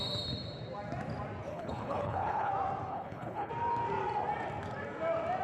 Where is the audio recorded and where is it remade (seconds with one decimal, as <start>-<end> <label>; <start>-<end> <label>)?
0.0-1.5 recorded; 1.5-2.5 remade; 2.5-2.9 recorded; 2.9-3.5 remade; 3.5-5.4 recorded